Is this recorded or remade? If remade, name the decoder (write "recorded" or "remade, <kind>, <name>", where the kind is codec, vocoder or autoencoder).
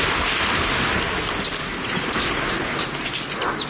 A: recorded